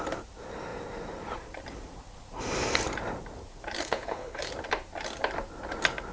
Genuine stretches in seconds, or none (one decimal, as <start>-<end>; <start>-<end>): 0.0-3.8; 4.5-6.1